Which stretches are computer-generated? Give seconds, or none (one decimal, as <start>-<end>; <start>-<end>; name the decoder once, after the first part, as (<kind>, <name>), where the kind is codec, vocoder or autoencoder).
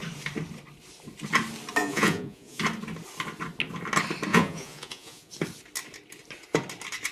1.8-2.6 (vocoder, Vocos); 4.3-5.3